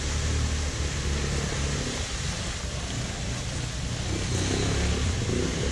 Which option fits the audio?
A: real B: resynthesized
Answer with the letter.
A